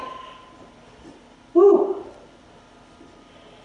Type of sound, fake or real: real